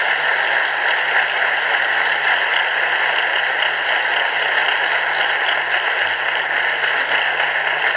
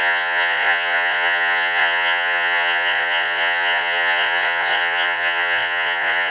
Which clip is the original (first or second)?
first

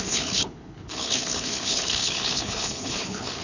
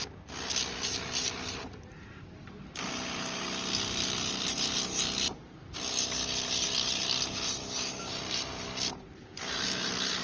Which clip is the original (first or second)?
second